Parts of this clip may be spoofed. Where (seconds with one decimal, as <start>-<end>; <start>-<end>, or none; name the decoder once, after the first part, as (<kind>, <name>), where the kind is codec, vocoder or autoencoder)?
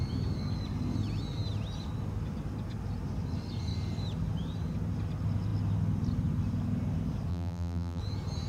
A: 7.3-8.0 (vocoder, BigVGAN v2)